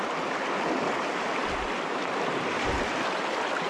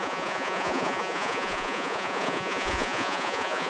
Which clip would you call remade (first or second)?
second